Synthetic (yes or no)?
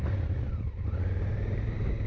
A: yes